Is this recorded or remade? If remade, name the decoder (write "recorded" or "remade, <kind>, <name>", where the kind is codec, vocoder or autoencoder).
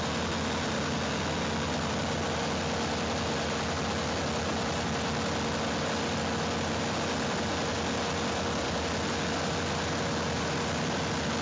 recorded